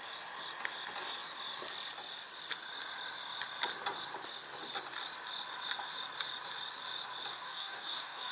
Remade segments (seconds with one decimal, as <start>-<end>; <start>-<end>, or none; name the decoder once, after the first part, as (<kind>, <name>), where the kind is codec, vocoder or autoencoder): 7.3-8.3 (codec, DAC)